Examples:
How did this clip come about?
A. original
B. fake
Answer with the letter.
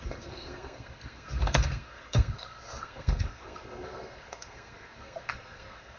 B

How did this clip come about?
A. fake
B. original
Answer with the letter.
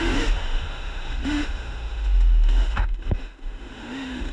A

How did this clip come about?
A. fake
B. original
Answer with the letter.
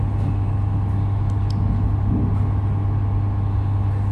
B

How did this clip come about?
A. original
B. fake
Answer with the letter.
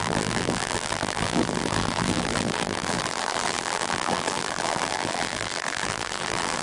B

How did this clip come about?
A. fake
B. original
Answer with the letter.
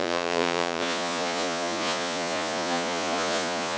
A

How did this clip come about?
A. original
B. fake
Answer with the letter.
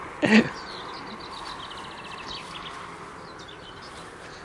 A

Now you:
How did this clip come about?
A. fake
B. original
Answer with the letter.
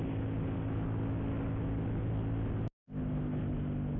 B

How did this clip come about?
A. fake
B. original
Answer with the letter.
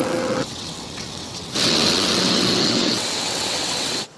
A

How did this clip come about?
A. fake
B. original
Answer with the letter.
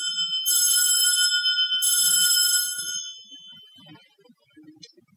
B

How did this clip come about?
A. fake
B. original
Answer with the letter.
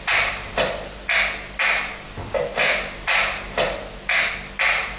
B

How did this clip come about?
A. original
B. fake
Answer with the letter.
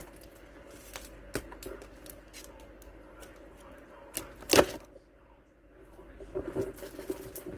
A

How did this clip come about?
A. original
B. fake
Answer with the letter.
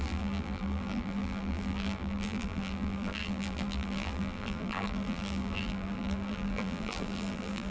B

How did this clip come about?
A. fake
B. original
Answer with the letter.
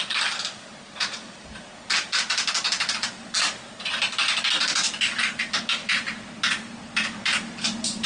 B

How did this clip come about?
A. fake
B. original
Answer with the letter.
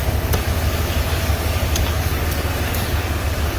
A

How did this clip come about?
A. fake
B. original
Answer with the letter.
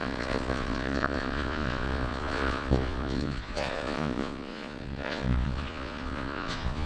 A